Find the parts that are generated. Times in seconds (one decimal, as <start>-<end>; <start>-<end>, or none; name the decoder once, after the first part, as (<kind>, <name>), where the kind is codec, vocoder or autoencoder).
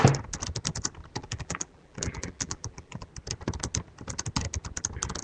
1.2-3.1 (vocoder, BigVGAN v2)